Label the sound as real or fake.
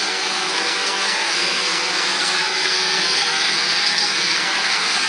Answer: fake